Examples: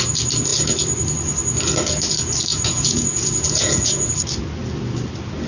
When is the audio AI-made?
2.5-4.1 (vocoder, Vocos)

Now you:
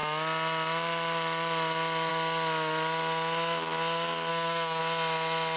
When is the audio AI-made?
4.3-4.8 (codec, DAC)

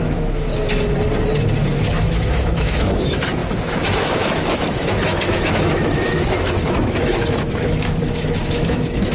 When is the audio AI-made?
0.0-0.5 (autoencoder, DAC-VAE); 1.8-9.1